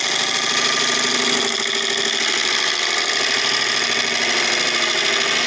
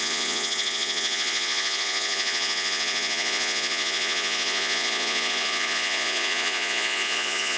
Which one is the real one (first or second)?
first